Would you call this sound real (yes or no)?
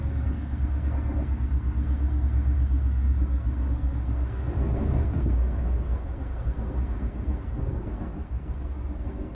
no